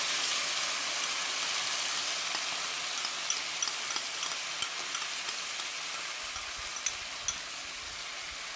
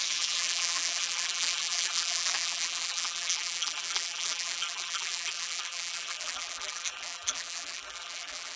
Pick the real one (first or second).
first